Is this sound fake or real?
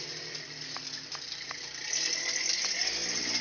real